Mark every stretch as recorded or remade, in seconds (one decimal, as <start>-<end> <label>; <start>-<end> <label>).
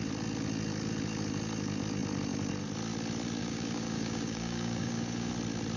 0.0-3.4 recorded; 3.4-5.3 remade; 5.3-5.8 recorded